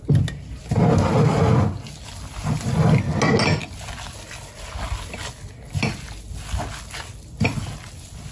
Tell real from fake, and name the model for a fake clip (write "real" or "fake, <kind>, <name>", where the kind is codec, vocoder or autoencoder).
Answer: real